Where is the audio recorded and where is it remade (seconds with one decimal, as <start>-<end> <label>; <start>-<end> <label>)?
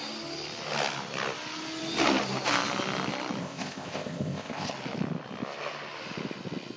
0.0-3.4 recorded; 3.4-4.7 remade; 4.7-6.8 recorded